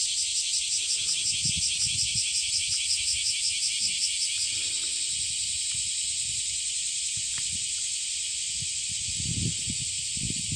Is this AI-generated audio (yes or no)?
no